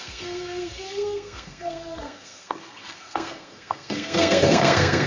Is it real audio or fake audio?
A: fake